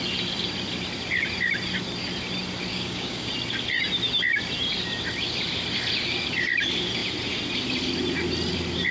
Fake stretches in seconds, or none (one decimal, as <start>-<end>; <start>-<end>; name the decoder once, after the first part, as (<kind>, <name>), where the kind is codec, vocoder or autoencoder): 2.7-3.3 (codec, DAC)